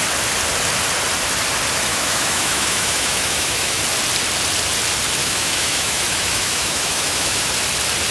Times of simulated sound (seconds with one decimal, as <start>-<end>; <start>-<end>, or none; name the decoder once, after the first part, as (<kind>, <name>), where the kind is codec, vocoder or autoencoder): 1.9-3.8 (autoencoder, DAC-VAE); 5.2-7.5